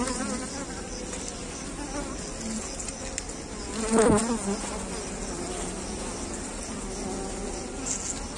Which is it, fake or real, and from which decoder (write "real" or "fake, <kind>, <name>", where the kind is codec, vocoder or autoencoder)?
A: real